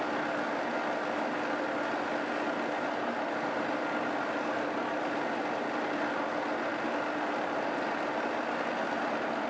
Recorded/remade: recorded